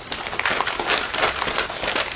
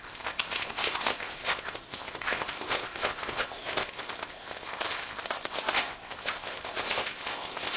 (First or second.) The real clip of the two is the first